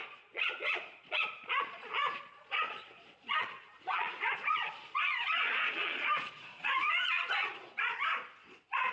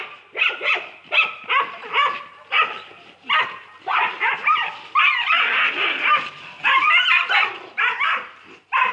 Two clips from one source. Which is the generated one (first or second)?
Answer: first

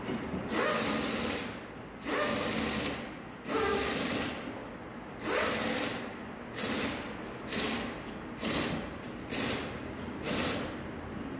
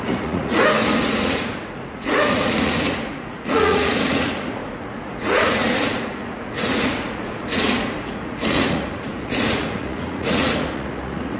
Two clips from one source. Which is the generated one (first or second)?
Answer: second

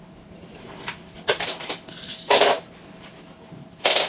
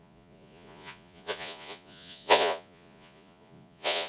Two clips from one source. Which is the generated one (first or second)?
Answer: second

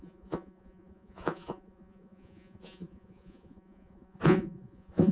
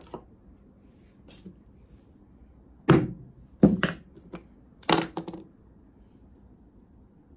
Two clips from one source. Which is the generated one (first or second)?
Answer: first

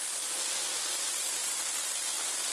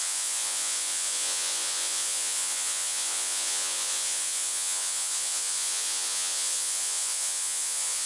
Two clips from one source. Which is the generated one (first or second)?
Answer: second